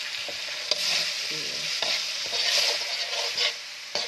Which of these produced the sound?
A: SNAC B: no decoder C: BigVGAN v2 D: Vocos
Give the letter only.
B